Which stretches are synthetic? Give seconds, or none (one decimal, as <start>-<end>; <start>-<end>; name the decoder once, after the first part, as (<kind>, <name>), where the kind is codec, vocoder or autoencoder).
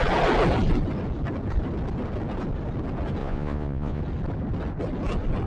3.2-4.0 (vocoder, Vocos)